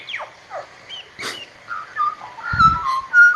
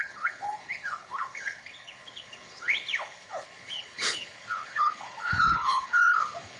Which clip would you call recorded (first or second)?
first